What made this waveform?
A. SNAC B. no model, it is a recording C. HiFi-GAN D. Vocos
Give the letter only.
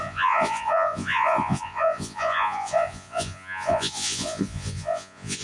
D